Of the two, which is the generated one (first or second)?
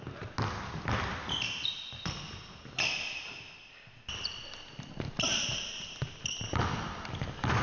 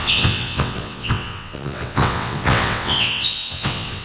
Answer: second